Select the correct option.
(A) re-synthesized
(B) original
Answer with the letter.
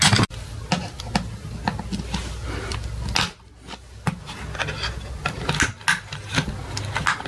B